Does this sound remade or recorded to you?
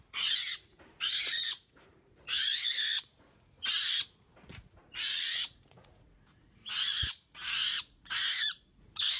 remade